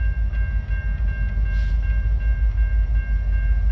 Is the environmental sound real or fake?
real